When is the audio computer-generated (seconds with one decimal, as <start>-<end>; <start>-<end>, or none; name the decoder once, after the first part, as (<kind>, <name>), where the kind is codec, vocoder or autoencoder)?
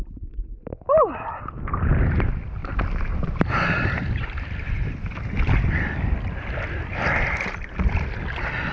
0.5-1.1 (vocoder, BigVGAN v2); 2.6-3.4